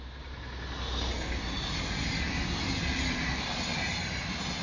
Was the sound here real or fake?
real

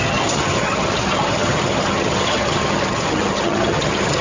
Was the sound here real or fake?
fake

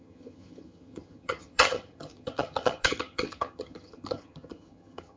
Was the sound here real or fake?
fake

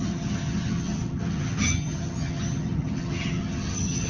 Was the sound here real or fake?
fake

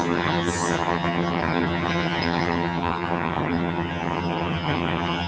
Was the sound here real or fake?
fake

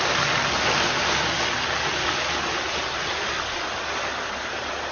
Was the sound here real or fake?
real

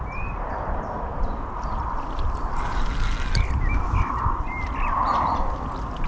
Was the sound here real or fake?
real